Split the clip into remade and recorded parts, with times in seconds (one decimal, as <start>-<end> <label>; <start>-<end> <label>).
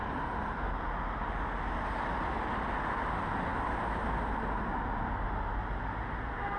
0.0-6.6 recorded